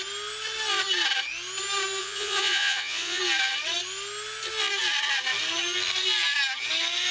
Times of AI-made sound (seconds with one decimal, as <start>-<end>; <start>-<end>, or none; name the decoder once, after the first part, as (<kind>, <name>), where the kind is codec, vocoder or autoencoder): 2.0-3.2 (vocoder, Vocos)